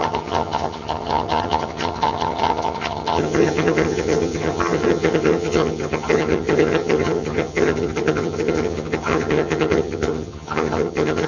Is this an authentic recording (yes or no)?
no